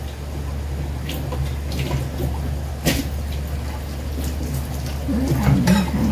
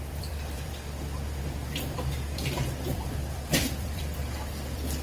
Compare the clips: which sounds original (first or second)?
first